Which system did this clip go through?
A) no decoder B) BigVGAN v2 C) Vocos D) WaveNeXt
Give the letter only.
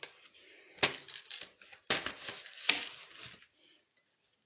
A